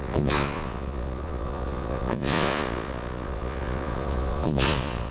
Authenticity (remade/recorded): remade